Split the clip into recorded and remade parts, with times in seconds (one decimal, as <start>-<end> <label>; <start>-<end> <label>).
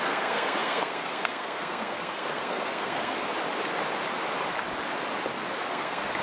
0.0-3.3 remade; 3.3-5.7 recorded; 5.7-6.2 remade